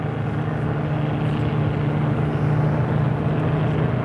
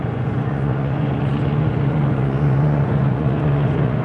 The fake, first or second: second